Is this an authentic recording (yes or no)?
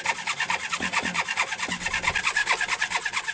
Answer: yes